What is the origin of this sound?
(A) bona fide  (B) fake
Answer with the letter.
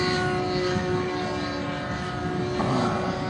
A